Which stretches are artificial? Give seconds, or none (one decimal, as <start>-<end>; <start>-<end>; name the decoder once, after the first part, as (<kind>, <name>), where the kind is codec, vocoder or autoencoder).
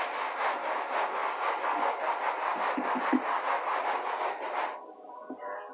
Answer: none